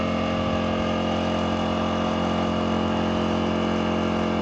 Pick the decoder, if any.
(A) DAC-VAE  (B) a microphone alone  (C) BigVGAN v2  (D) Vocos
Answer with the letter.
B